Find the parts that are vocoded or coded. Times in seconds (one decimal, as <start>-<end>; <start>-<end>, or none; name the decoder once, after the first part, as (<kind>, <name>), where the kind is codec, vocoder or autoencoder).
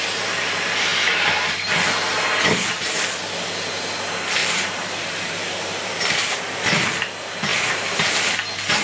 4.4-6.4 (vocoder, BigVGAN v2); 7.5-8.3